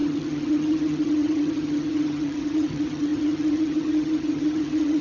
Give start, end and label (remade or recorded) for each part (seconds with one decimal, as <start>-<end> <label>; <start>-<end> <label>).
0.0-5.0 remade